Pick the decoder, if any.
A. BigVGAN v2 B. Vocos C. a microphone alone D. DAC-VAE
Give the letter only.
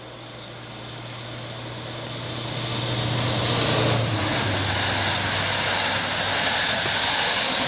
C